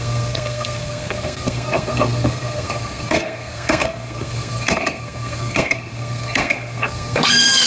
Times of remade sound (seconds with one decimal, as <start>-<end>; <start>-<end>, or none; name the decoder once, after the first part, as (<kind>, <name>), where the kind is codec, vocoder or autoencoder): 0.0-7.7 (codec, SNAC)